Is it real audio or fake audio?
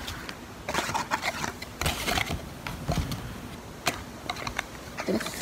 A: real